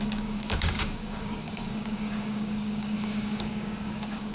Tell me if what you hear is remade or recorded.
remade